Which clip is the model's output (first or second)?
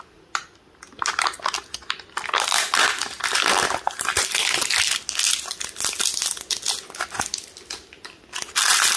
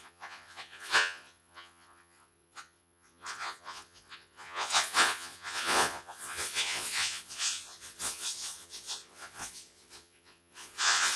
second